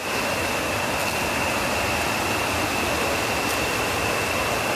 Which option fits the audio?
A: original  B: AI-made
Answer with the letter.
A